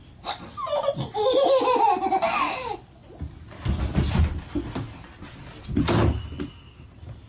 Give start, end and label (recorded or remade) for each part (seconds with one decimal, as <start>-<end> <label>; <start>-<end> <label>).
0.0-7.3 recorded